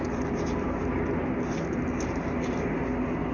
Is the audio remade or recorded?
recorded